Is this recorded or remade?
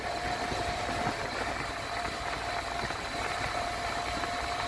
recorded